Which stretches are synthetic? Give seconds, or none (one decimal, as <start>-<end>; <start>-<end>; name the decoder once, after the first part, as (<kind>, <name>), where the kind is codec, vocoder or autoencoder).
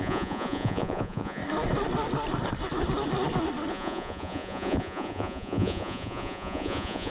0.0-1.4 (vocoder, Vocos); 3.7-7.1